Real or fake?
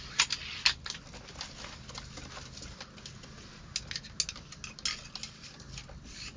real